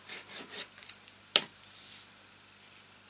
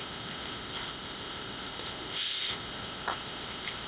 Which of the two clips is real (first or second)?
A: first